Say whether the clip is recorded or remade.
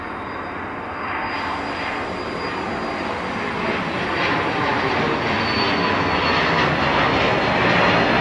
recorded